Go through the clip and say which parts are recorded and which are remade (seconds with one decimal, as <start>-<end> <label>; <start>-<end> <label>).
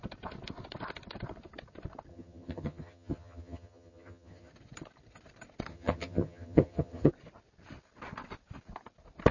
0.0-2.1 recorded; 2.1-4.5 remade; 4.5-5.7 recorded; 5.7-7.1 remade; 7.1-9.3 recorded